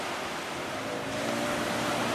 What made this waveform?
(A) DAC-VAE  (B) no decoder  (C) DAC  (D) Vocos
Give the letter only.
B